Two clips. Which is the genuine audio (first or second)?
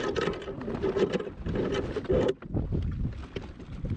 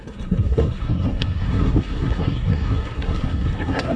first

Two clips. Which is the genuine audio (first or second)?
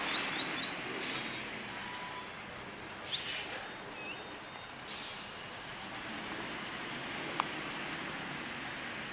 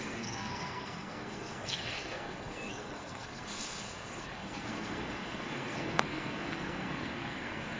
first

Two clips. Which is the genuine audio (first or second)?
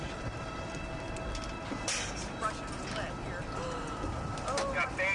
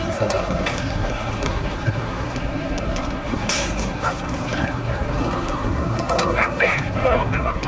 first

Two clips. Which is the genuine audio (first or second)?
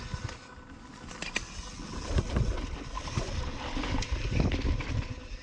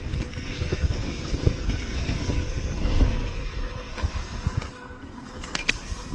first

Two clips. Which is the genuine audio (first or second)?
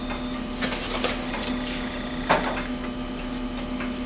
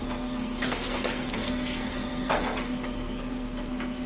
first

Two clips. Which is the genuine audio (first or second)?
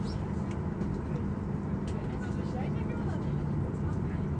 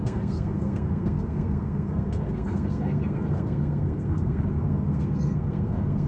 first